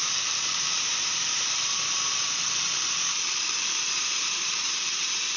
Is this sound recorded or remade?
remade